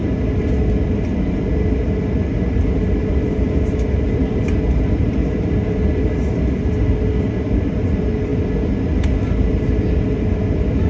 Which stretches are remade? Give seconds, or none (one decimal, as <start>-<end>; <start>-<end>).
none